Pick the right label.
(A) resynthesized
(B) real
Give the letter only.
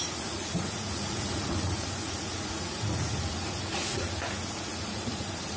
A